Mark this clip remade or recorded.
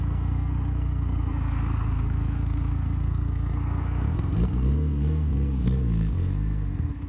remade